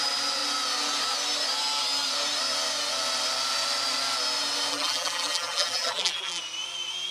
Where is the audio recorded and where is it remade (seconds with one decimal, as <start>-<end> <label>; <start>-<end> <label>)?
0.0-4.7 recorded; 4.7-6.4 remade; 6.4-7.1 recorded